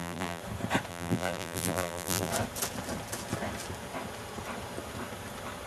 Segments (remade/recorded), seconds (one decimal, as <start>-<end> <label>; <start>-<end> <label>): 0.0-0.4 remade; 0.4-0.9 recorded; 0.9-2.3 remade; 2.3-5.7 recorded